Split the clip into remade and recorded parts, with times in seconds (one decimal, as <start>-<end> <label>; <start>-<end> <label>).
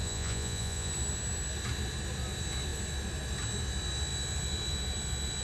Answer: 0.0-0.9 remade; 0.9-5.4 recorded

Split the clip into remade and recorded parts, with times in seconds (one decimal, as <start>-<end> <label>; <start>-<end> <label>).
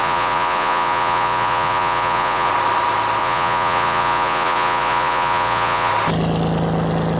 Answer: 0.0-2.5 remade; 2.5-3.2 recorded; 3.2-5.9 remade; 5.9-7.2 recorded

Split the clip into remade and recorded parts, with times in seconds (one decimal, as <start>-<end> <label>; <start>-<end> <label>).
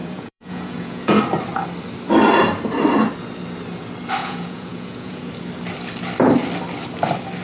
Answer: 0.0-1.2 remade; 1.2-4.2 recorded; 4.2-5.3 remade; 5.3-7.4 recorded